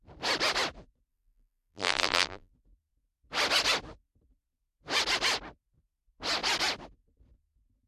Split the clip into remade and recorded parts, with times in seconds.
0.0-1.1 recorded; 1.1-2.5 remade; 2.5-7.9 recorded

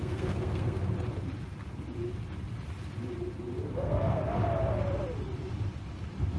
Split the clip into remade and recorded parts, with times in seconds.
0.0-0.8 remade; 0.8-3.7 recorded; 3.7-4.2 remade; 4.2-6.4 recorded

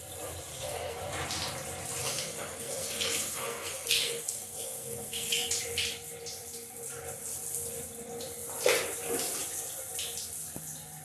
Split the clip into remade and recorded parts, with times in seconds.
0.0-0.5 recorded; 0.5-1.0 remade; 1.0-2.0 recorded; 2.0-5.5 remade; 5.5-11.0 recorded

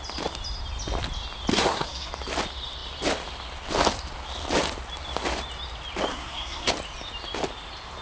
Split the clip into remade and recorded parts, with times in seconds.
0.0-1.5 recorded; 1.5-2.1 remade; 2.1-6.1 recorded; 6.1-6.7 remade; 6.7-8.0 recorded